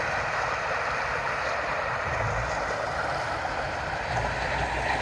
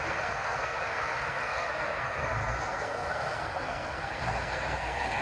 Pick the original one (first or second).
first